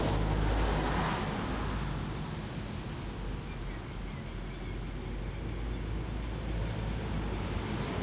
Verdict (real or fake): real